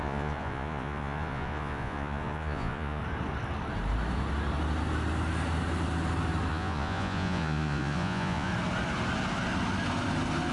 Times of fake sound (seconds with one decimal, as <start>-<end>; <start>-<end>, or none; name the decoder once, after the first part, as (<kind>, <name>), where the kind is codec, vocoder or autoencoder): 0.0-3.0 (vocoder, Vocos); 6.5-8.5